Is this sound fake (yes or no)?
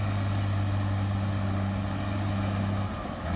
no